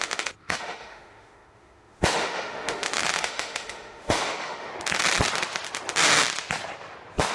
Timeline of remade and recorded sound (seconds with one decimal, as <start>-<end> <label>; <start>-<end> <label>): 0.0-4.7 remade; 4.7-7.3 recorded